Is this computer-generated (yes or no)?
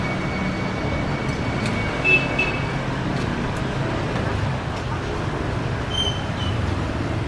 no